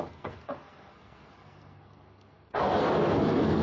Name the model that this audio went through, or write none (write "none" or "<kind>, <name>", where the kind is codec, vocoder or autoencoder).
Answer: codec, SNAC